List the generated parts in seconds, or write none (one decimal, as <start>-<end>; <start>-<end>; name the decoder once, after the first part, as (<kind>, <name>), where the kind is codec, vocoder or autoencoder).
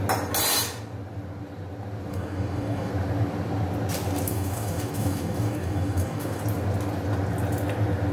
2.1-2.9 (codec, DAC); 4.3-6.4